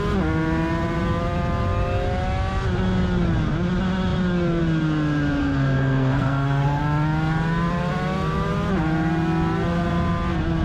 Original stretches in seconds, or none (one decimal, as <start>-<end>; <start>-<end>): 0.0-5.4; 6.8-10.6